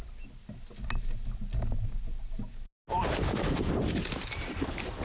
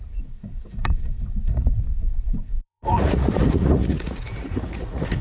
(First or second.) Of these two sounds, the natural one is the first